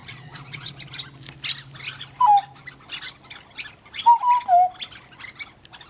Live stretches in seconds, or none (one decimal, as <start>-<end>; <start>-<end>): 0.7-5.9

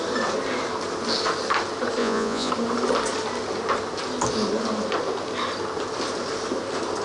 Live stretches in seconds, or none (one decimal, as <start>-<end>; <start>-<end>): 0.0-2.0; 2.5-7.0

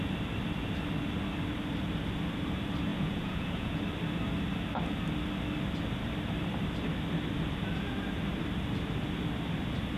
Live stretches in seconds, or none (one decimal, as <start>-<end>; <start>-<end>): 0.0-2.9; 3.8-10.0

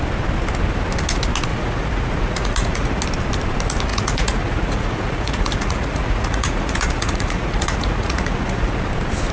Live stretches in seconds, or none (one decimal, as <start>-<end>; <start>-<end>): 0.0-1.5; 3.0-3.9; 8.9-9.3